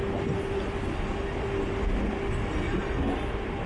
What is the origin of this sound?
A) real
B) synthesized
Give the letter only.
A